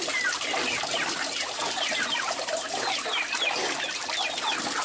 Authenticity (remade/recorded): recorded